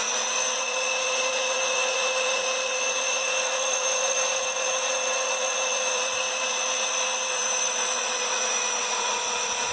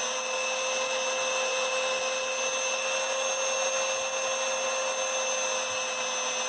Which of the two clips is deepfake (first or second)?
first